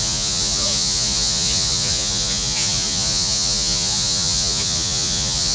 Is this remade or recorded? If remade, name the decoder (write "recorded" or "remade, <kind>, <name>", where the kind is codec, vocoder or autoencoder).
remade, vocoder, Vocos